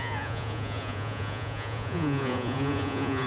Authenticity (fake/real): fake